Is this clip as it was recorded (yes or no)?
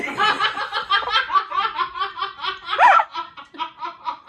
no